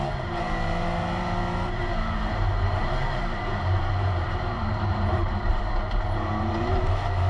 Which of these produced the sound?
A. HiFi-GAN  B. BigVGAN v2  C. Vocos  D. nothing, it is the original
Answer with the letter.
B